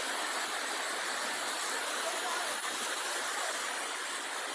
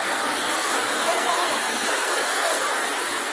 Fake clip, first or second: second